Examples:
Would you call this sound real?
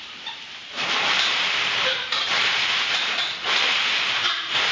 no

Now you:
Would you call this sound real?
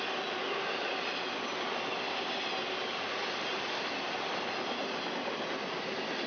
yes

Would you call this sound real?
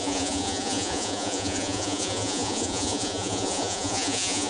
no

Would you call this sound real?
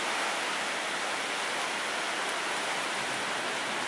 yes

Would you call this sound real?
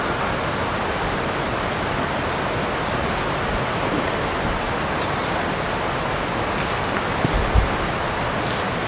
yes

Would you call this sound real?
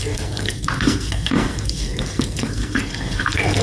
no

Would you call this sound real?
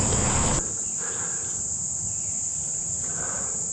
yes